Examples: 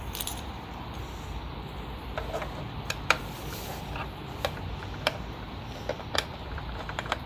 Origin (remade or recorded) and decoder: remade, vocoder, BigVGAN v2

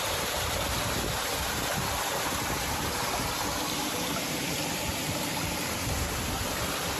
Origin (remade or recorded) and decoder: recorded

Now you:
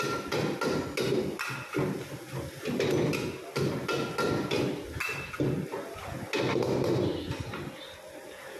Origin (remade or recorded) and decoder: recorded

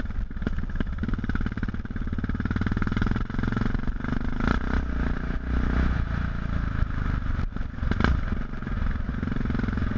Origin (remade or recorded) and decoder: recorded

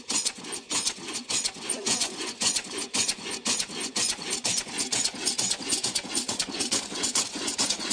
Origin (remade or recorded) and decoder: remade, vocoder, Vocos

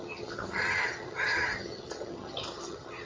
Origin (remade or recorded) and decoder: remade, vocoder, HiFi-GAN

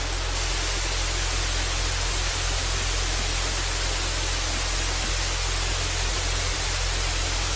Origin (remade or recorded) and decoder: recorded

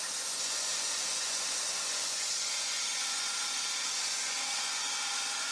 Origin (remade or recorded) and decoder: remade, vocoder, Vocos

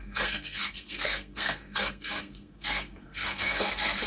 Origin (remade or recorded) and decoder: remade, codec, SNAC